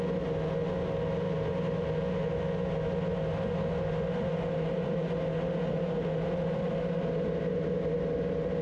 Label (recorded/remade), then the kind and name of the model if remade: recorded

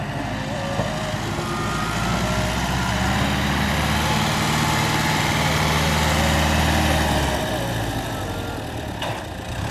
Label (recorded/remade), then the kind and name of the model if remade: recorded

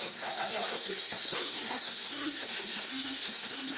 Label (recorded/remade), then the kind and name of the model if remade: remade, codec, SNAC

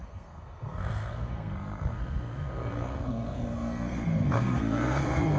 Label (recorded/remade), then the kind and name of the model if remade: remade, codec, SNAC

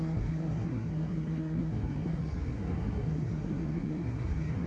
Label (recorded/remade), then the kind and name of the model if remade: remade, codec, SNAC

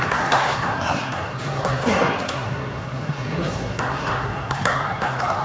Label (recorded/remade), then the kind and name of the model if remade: remade, codec, SNAC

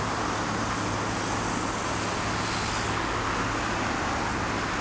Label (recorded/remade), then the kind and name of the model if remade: recorded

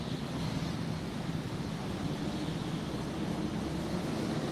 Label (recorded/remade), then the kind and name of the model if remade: recorded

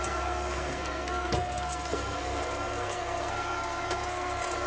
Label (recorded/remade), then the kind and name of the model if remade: remade, codec, SNAC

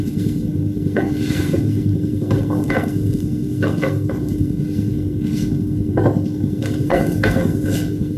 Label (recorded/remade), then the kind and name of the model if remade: remade, codec, SNAC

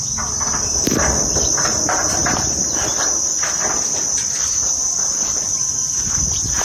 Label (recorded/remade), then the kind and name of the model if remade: recorded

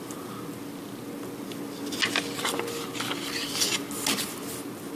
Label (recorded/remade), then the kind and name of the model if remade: recorded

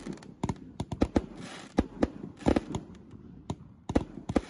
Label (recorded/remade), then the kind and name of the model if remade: recorded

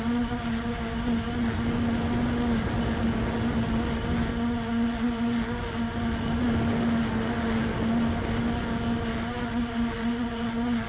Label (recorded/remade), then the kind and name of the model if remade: recorded